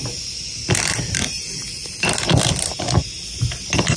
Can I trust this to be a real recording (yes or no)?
yes